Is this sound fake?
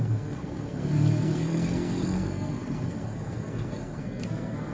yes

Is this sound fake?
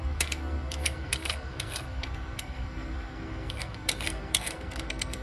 yes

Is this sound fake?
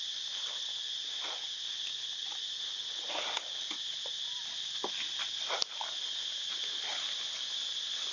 no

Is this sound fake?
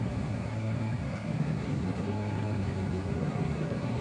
yes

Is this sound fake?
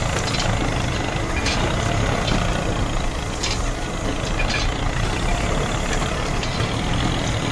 no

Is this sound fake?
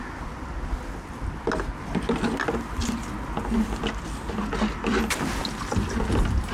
no